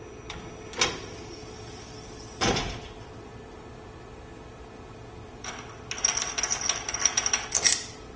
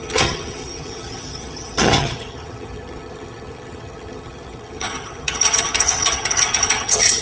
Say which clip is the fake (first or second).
second